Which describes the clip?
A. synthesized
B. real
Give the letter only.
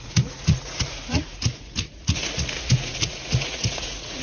A